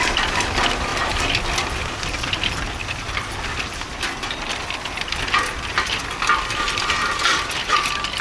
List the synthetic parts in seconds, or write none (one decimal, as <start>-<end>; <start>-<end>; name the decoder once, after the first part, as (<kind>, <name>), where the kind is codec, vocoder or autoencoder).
2.8-6.0 (vocoder, BigVGAN v2)